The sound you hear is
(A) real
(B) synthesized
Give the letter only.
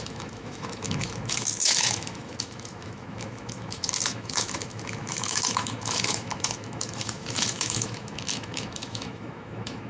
B